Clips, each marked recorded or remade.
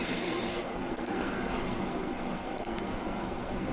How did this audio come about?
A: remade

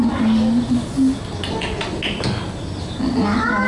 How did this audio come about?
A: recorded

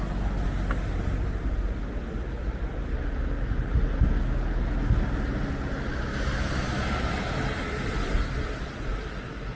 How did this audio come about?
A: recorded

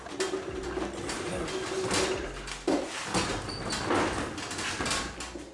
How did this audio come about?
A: recorded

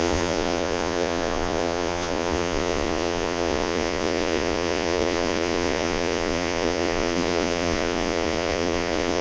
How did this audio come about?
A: remade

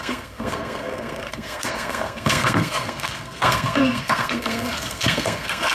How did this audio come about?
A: remade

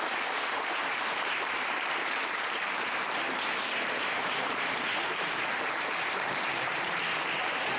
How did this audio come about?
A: remade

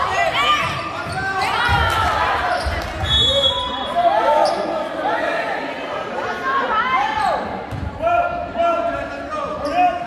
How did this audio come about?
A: recorded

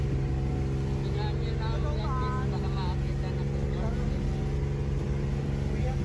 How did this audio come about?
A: recorded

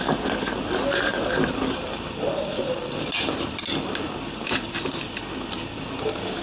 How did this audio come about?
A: recorded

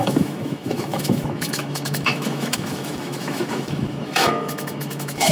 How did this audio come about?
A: remade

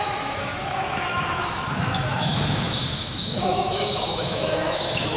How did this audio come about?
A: remade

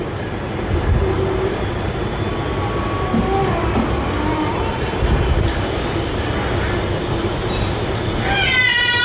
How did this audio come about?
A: recorded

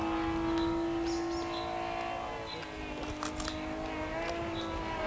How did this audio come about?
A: recorded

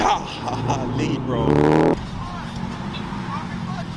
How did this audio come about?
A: recorded